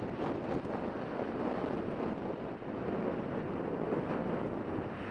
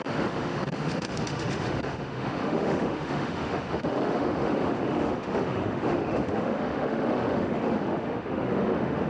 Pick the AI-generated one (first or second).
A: second